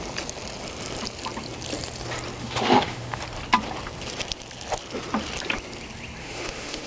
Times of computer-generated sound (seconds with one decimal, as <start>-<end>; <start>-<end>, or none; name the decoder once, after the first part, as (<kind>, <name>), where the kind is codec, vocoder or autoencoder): 2.4-3.2 (autoencoder, DAC-VAE); 6.2-6.9

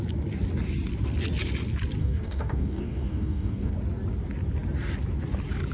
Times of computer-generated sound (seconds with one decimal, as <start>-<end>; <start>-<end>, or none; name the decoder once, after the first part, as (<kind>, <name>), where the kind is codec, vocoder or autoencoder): 2.0-3.7 (codec, DAC)

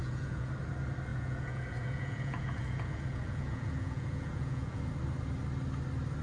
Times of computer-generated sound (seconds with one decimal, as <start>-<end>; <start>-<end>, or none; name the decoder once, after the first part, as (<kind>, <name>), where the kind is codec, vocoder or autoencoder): 0.0-0.5 (vocoder, Vocos); 1.1-4.8

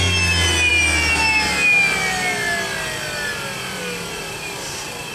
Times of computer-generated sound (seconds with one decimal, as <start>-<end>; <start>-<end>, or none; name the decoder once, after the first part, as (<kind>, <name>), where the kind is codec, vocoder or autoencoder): none

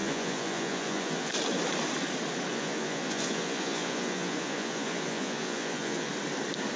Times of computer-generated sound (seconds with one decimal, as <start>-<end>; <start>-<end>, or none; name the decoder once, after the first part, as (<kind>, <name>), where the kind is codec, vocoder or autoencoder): 0.0-1.3 (vocoder, Vocos); 2.5-6.1

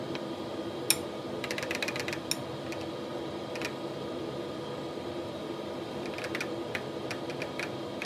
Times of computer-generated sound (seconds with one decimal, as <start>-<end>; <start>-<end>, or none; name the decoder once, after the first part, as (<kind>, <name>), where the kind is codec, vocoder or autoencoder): none

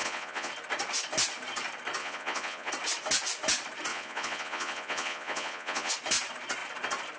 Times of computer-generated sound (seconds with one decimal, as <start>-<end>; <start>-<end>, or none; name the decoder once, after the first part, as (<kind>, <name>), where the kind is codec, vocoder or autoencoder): 0.0-0.5 (vocoder, Vocos); 2.0-2.7; 3.9-5.9

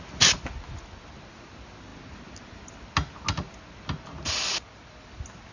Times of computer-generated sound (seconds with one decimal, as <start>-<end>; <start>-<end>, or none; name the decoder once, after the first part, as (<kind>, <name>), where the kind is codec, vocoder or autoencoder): none